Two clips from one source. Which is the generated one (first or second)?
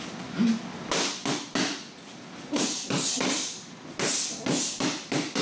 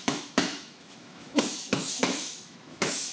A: second